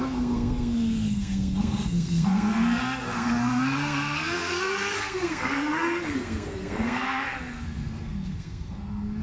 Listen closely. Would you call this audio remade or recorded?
remade